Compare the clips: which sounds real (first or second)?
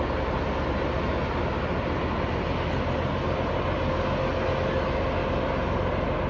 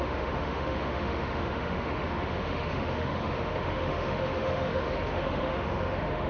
first